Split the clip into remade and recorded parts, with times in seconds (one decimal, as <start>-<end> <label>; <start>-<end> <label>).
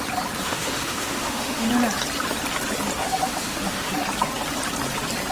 0.0-0.4 recorded; 0.4-1.7 remade; 1.7-3.0 recorded; 3.0-3.9 remade; 3.9-5.3 recorded